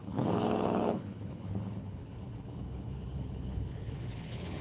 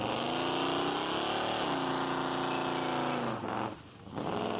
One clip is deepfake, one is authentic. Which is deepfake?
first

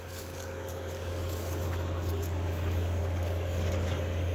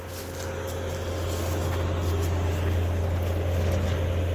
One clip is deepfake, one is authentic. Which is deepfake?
first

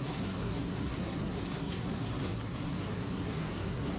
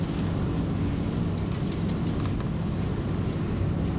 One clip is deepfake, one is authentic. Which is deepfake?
first